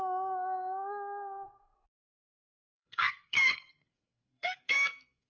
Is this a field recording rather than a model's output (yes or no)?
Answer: no